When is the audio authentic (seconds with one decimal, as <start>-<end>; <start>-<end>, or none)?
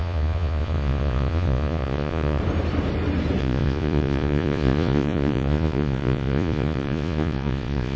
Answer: 2.4-3.4